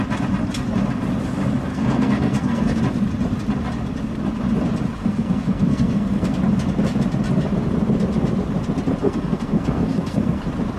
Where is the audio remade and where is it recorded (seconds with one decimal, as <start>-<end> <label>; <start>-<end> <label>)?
0.0-1.7 recorded; 1.7-2.8 remade; 2.8-5.0 recorded; 5.0-6.4 remade; 6.4-9.0 recorded; 9.0-10.4 remade; 10.4-10.8 recorded